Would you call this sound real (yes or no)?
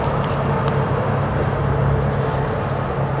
yes